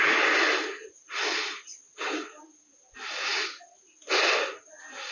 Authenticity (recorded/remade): recorded